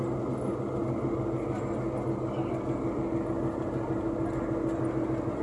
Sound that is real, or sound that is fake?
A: real